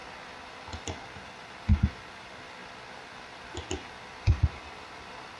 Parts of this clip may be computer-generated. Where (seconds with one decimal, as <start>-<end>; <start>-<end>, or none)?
none